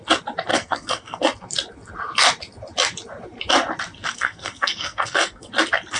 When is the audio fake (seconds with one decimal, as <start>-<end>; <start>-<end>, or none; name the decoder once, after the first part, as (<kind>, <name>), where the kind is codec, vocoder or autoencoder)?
0.5-1.2 (codec, SNAC); 4.1-5.5